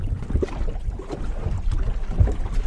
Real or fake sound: real